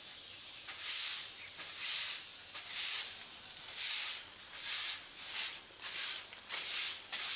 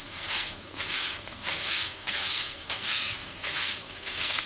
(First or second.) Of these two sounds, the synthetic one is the second